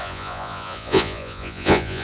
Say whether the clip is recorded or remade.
remade